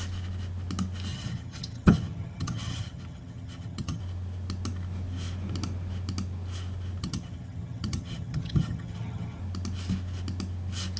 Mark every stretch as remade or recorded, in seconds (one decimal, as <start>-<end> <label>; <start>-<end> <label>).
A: 0.0-1.1 recorded; 1.1-4.0 remade; 4.0-7.0 recorded; 7.0-9.4 remade; 9.4-11.0 recorded